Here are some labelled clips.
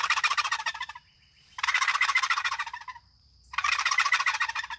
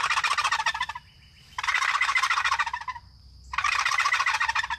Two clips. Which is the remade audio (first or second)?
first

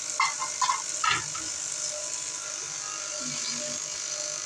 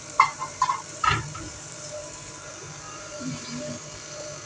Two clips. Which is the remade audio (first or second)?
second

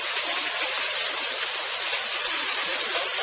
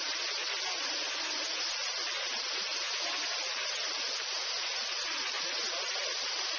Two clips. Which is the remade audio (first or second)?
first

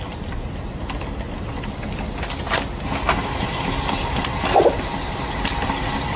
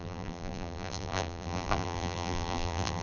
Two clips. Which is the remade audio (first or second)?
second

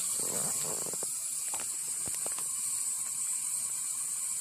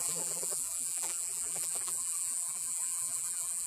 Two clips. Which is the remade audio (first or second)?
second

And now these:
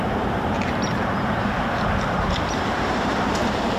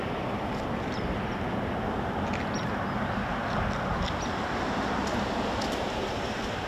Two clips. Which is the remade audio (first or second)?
first